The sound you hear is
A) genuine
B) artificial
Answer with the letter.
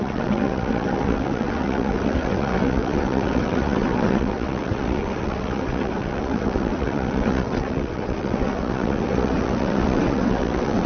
B